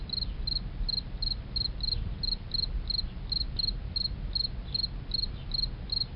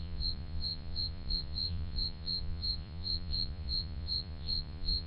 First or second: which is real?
first